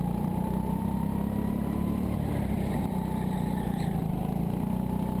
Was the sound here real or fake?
real